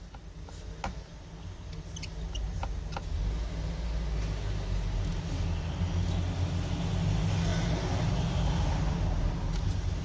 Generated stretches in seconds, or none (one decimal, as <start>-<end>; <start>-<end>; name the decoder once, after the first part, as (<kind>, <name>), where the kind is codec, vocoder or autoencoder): none